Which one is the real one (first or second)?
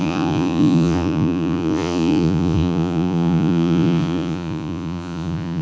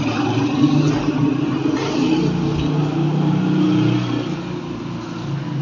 second